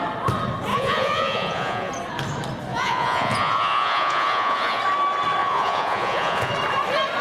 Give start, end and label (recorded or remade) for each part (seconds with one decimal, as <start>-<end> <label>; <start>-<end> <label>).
0.0-0.7 recorded; 0.7-1.9 remade; 1.9-2.7 recorded; 2.7-4.8 remade; 4.8-5.4 recorded; 5.4-6.5 remade; 6.5-7.2 recorded